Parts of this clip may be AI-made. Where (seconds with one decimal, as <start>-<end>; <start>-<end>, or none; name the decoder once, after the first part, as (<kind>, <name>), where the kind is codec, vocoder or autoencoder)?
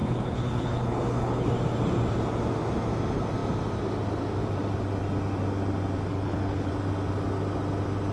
0.0-1.5 (codec, HILCodec); 6.1-6.7